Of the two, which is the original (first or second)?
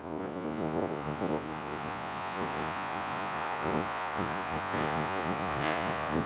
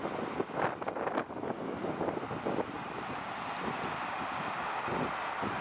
second